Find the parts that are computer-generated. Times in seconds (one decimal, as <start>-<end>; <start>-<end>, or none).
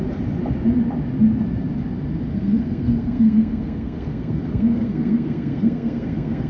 2.3-6.5